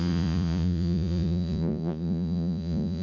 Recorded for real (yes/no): no